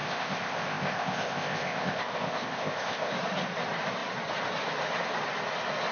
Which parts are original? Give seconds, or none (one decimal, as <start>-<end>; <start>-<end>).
3.1-5.9